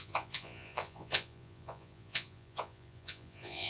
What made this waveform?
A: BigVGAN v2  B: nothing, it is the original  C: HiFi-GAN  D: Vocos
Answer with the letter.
D